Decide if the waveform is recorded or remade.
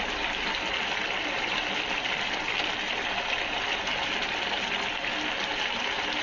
recorded